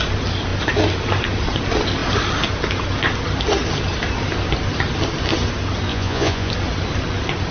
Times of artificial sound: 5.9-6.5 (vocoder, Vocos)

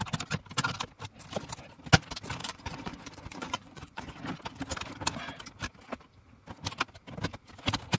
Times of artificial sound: 2.4-4.2 (vocoder, Vocos)

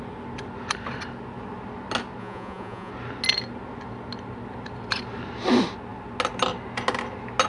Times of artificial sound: 2.2-2.9 (vocoder, Vocos)

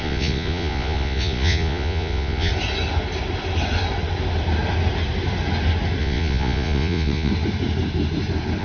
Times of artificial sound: 0.0-2.5 (vocoder, Vocos); 6.0-7.3